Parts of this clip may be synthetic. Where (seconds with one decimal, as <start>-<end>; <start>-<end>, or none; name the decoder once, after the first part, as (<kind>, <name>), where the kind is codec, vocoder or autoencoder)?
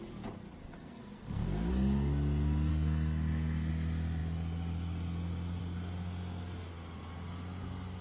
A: 0.6-1.7 (codec, SNAC); 2.7-3.7